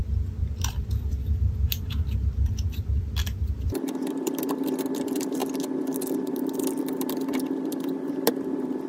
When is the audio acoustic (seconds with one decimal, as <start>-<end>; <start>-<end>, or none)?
5.4-6.3